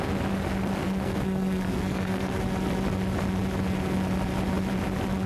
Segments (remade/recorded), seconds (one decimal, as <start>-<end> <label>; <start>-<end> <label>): 0.0-0.8 recorded; 0.8-2.4 remade; 2.4-5.3 recorded